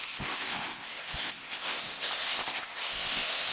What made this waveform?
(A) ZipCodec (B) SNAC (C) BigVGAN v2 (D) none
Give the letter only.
A